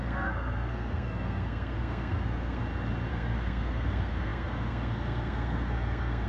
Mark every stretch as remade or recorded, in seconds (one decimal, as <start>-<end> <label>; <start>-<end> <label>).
0.0-2.6 remade; 2.6-3.1 recorded; 3.1-6.3 remade